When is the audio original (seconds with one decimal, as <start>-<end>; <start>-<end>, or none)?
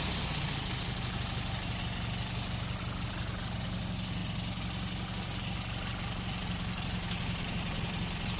0.0-8.4